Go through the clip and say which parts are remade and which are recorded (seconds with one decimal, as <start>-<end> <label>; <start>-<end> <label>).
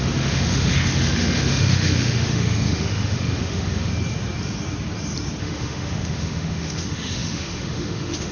0.0-3.9 remade; 3.9-5.4 recorded; 5.4-8.3 remade